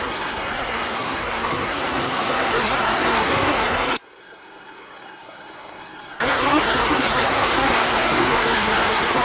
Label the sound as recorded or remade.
remade